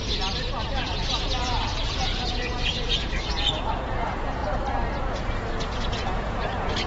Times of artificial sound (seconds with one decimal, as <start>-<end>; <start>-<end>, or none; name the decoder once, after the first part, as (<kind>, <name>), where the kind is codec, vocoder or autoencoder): 0.7-4.4 (vocoder, Vocos); 5.0-6.9